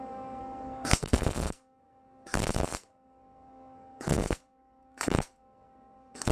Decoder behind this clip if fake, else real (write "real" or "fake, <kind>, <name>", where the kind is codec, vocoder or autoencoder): fake, codec, SNAC